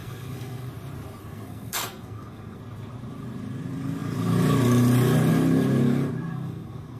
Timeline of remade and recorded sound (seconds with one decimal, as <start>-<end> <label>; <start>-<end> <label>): 0.0-0.7 remade; 0.7-1.2 recorded; 1.2-2.6 remade; 2.6-6.3 recorded; 6.3-7.0 remade